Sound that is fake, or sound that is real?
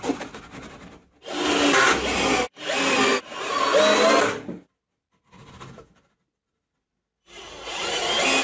real